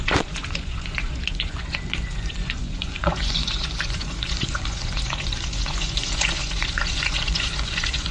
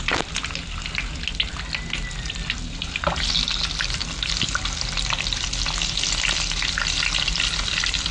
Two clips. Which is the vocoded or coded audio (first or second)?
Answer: first